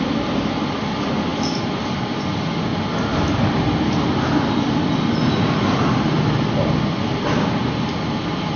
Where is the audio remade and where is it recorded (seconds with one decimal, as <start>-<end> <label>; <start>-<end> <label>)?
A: 0.0-8.6 recorded